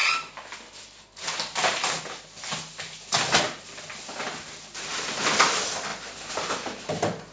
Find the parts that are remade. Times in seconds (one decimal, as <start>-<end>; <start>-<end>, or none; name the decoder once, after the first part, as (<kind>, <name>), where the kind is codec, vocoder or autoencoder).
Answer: none